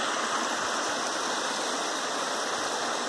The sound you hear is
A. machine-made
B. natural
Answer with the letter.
B